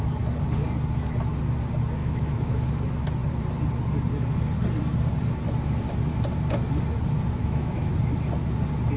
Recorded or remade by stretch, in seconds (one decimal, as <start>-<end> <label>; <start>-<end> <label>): 0.0-2.0 recorded; 2.0-2.7 remade; 2.7-7.4 recorded; 7.4-7.9 remade; 7.9-9.0 recorded